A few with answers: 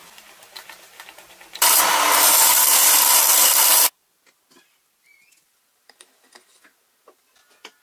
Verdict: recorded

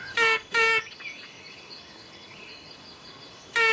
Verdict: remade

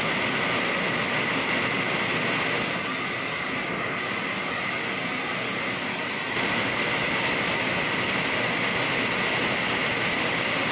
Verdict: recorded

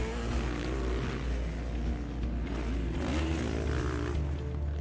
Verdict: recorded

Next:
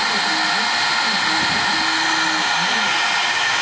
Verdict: recorded